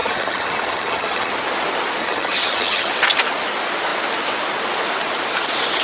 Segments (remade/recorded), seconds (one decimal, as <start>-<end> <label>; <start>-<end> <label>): 0.0-1.3 remade; 1.3-2.0 recorded; 2.0-2.9 remade; 2.9-5.8 recorded